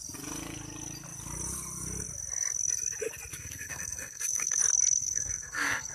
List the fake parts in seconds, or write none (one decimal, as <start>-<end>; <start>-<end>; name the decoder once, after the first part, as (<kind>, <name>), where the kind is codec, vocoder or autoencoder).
3.3-4.6 (codec, SNAC); 5.0-5.9